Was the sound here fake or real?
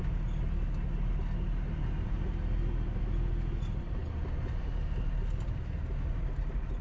real